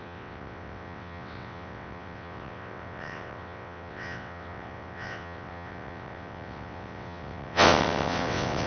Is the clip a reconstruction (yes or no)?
yes